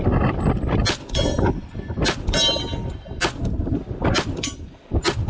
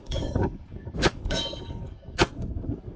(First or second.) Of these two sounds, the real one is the first